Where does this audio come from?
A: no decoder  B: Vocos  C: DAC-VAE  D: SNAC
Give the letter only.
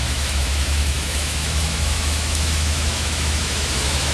C